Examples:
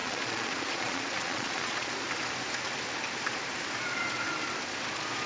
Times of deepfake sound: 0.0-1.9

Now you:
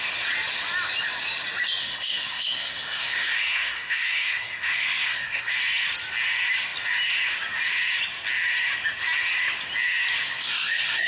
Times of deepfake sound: 1.8-5.5; 10.4-11.1

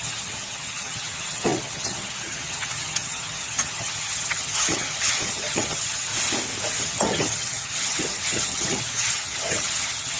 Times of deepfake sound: 0.0-6.1; 6.8-10.2

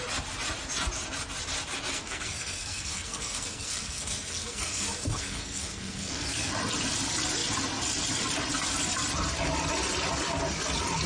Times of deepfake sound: 1.9-6.5

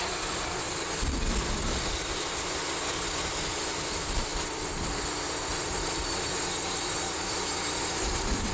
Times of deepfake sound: none